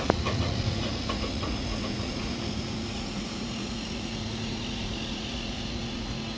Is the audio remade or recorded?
remade